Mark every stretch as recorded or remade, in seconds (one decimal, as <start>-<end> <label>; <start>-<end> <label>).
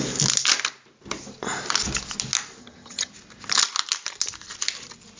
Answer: 0.0-2.6 recorded; 2.6-3.1 remade; 3.1-5.2 recorded